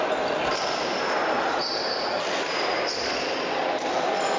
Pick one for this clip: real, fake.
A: real